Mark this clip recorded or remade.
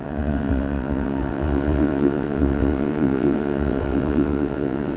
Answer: remade